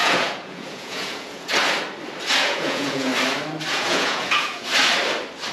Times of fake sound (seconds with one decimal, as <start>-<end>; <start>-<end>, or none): 0.0-1.5; 2.4-3.1; 3.7-4.7